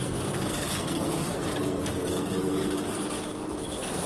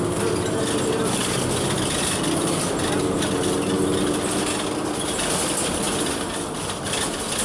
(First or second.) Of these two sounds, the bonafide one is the second